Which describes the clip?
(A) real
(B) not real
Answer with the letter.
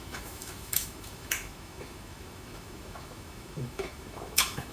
B